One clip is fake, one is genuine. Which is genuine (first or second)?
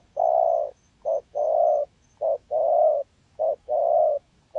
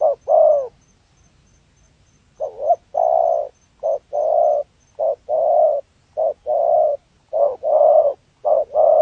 second